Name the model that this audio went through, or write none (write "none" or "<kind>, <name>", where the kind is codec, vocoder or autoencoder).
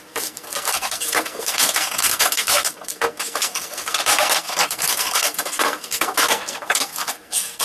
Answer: codec, SNAC